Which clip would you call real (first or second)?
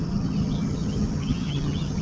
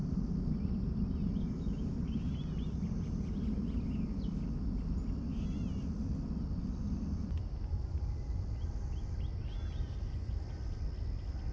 second